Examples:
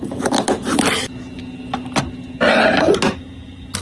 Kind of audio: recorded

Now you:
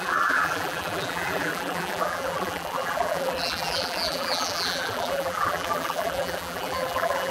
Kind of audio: remade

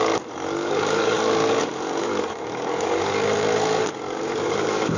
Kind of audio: remade